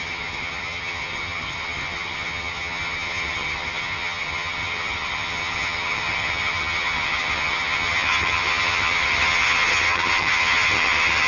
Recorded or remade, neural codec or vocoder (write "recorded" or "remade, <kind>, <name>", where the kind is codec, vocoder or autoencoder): remade, vocoder, HiFi-GAN